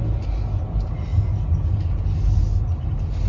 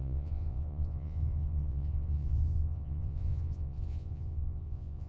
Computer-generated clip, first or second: second